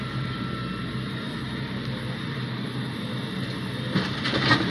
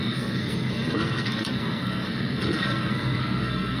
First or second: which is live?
first